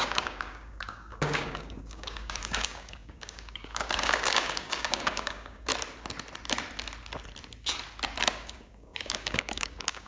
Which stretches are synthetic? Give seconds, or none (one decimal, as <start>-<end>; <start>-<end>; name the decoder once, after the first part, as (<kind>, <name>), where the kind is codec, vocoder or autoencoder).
0.0-5.7 (codec, DAC); 8.3-10.1